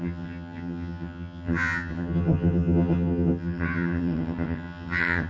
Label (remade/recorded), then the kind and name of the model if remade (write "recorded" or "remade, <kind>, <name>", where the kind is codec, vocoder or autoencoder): remade, vocoder, HiFi-GAN